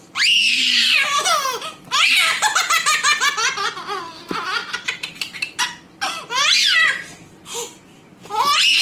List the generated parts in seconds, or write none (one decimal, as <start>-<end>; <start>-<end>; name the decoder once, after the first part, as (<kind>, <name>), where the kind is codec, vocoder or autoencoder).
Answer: none

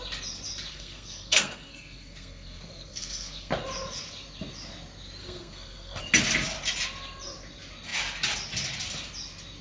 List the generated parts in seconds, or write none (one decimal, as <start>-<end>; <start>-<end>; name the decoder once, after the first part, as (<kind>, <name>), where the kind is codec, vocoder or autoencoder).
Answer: 0.7-3.5 (codec, SNAC); 5.2-6.0

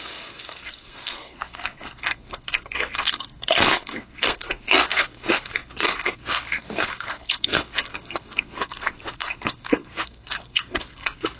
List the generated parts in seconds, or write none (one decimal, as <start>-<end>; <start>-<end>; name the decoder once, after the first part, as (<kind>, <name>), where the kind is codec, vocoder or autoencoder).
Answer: 0.0-11.4 (codec, SNAC)

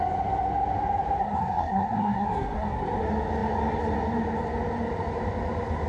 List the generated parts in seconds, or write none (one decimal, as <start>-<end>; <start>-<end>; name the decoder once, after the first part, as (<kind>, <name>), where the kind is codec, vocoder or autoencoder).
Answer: 1.2-3.0 (codec, SNAC)

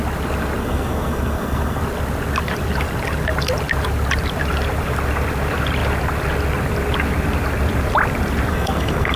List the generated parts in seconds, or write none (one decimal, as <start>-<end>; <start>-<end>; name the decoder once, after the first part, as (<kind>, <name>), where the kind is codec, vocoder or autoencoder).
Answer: 0.6-1.8 (codec, SNAC); 8.5-9.2